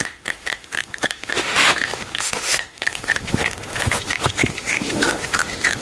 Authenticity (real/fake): fake